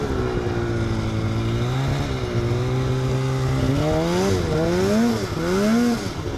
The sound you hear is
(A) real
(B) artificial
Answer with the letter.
A